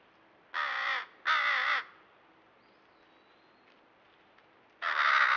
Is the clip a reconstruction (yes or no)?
no